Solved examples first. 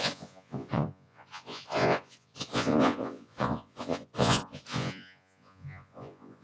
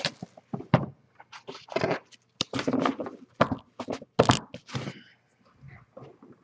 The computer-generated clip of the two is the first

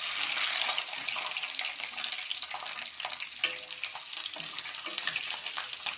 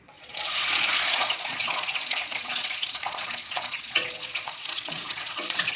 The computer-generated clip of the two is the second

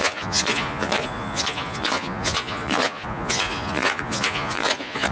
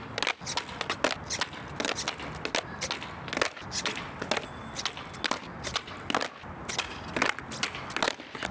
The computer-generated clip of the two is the first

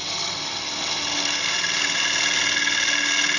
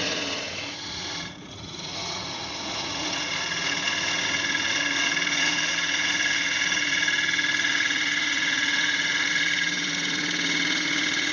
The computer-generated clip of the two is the second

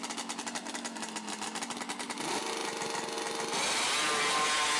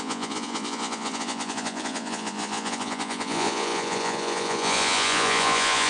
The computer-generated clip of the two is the second